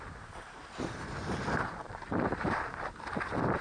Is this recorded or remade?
remade